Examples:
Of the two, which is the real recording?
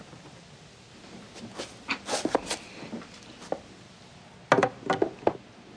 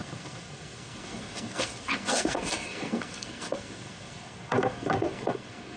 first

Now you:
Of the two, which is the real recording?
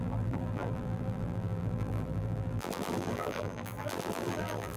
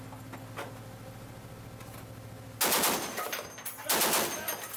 second